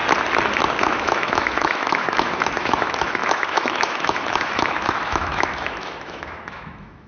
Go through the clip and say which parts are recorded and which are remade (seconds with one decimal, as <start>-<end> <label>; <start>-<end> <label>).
0.0-0.8 recorded; 0.8-7.1 remade